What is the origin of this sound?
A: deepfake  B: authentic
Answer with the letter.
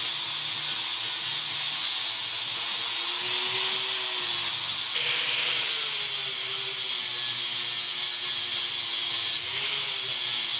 B